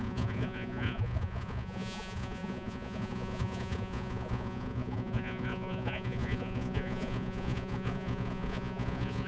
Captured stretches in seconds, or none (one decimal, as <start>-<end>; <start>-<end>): none